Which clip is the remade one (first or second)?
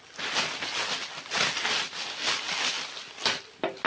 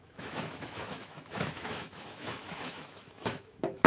second